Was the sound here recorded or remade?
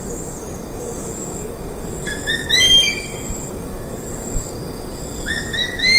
remade